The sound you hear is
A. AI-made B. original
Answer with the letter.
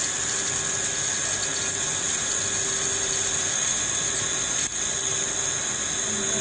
B